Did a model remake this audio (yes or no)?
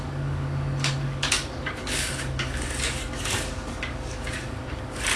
yes